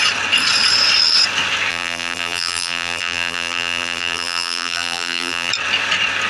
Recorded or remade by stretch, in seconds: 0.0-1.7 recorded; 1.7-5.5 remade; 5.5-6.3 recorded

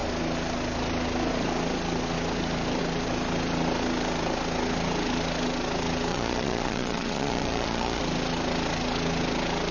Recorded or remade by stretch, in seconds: 0.0-6.1 recorded; 6.1-8.0 remade; 8.0-9.7 recorded

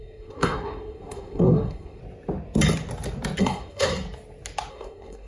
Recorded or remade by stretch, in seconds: 0.0-2.0 remade; 2.0-3.4 recorded; 3.4-3.9 remade; 3.9-4.7 recorded; 4.7-5.3 remade

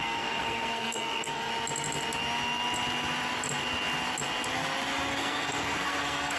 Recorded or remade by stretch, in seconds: 0.0-1.5 remade; 1.5-5.1 recorded; 5.1-6.4 remade

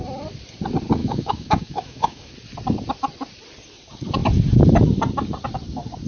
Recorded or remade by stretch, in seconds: 0.0-1.0 recorded; 1.0-2.3 remade; 2.3-6.1 recorded